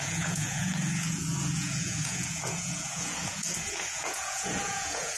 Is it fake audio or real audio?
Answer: fake